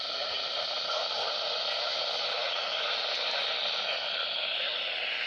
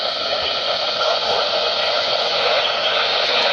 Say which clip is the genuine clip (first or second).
first